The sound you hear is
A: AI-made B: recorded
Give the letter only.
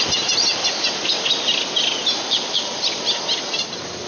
B